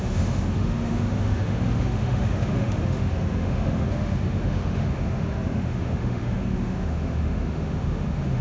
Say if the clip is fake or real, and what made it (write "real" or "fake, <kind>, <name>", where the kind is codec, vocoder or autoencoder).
fake, autoencoder, DAC-VAE